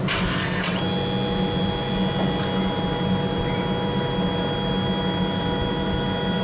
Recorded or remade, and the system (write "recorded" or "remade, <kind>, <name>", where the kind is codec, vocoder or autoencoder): recorded